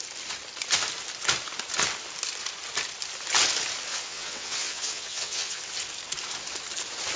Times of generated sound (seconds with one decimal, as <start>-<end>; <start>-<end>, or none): 3.9-5.6